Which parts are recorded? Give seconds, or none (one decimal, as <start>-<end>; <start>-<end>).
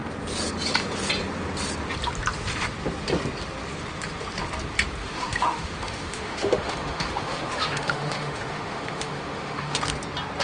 0.0-5.0; 9.8-10.4